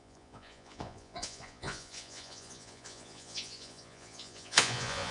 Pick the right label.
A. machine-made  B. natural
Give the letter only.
A